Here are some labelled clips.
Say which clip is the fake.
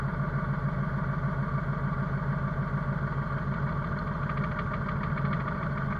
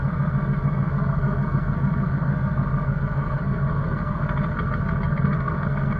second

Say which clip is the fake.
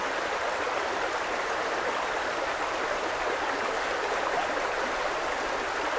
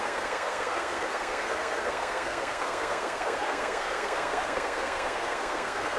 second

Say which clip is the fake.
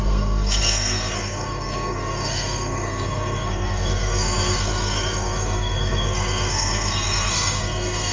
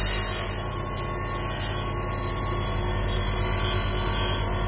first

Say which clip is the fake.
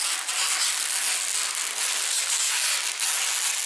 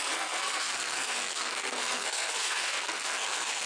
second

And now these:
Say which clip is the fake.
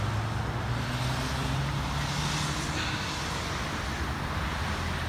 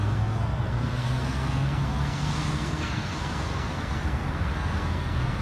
second